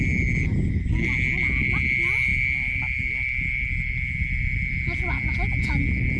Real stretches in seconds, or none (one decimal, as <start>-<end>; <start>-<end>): 0.0-6.2